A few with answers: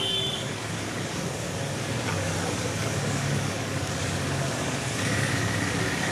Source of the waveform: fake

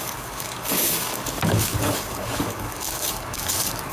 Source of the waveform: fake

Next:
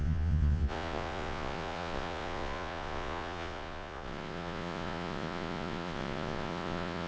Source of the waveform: fake